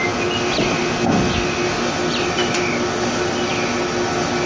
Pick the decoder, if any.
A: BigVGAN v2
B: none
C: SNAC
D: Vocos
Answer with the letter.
B